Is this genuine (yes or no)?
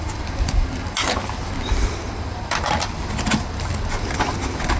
yes